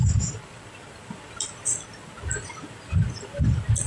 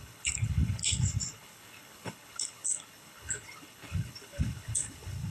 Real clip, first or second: first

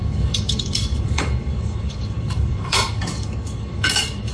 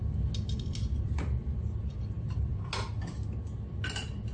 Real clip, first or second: second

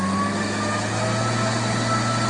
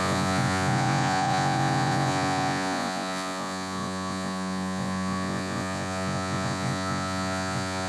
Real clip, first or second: first